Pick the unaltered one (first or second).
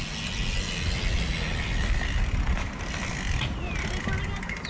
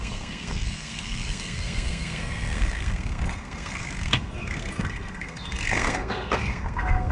first